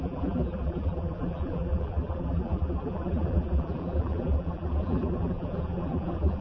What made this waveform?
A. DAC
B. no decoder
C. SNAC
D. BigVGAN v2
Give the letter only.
D